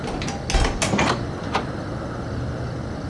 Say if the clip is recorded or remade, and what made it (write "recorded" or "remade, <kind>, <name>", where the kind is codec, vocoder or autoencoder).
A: recorded